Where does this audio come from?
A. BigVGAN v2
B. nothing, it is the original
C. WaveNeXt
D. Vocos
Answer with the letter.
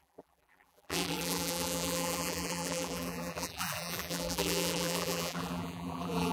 A